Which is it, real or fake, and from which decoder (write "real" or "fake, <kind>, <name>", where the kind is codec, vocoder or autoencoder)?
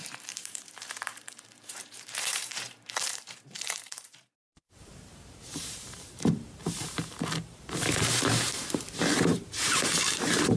fake, vocoder, BigVGAN v2